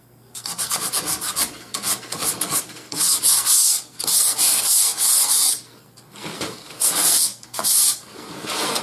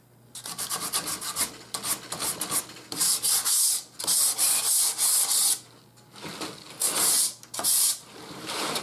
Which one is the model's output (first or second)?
first